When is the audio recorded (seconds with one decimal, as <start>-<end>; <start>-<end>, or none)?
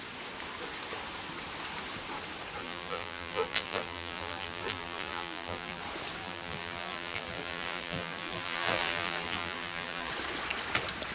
0.0-2.6; 5.8-6.2; 10.1-11.1